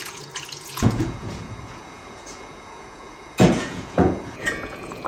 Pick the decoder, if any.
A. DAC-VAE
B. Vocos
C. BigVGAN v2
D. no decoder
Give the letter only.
B